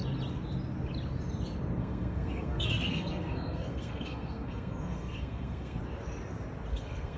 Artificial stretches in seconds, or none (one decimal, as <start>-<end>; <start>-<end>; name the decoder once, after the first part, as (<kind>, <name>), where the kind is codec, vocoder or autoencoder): 1.8-5.8 (codec, SNAC); 6.7-7.2